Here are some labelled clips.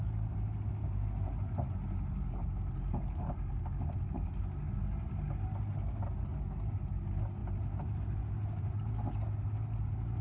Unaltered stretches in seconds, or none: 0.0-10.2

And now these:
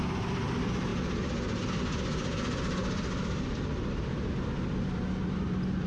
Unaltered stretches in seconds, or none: 0.0-5.9

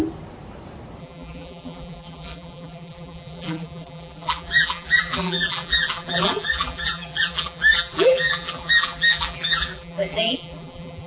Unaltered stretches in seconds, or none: 0.0-1.0

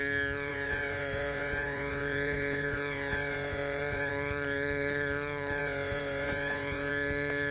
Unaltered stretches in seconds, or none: 0.0-0.5; 4.1-5.6; 6.9-7.5

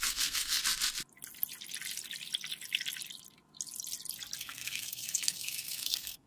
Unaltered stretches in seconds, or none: 0.6-4.4